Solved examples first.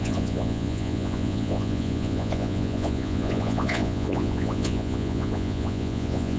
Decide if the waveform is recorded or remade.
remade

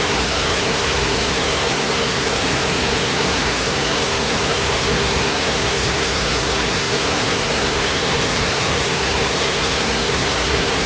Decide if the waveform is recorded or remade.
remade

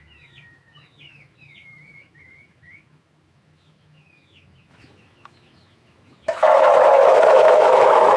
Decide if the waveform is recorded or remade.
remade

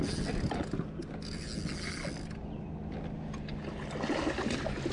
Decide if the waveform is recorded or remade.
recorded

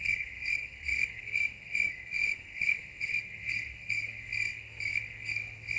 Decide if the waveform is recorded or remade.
remade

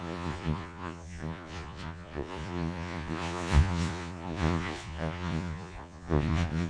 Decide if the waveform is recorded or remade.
remade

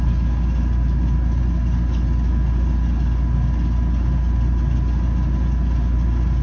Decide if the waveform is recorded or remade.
recorded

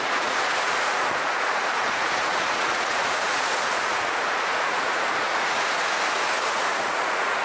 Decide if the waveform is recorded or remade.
remade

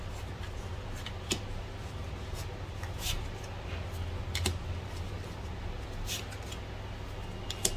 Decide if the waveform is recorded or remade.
recorded